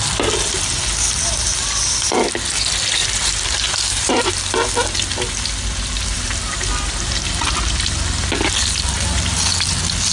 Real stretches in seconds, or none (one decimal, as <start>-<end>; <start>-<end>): 0.0-3.0; 4.1-10.1